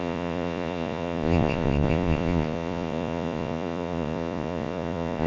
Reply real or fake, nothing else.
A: fake